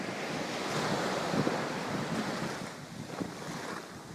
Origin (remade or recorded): recorded